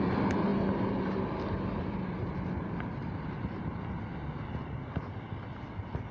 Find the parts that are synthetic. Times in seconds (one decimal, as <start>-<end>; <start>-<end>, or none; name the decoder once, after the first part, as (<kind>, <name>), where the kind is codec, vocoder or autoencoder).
none